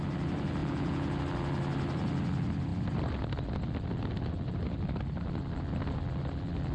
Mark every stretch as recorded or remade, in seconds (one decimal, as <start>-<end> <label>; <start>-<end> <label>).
0.0-0.6 recorded; 0.6-1.2 remade; 1.2-6.7 recorded